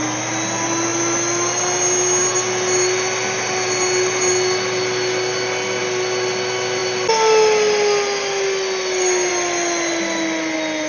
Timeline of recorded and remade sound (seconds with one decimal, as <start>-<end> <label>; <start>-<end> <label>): 0.0-10.9 recorded